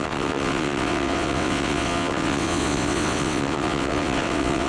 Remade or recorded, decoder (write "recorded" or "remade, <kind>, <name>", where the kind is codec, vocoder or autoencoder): remade, vocoder, WaveNeXt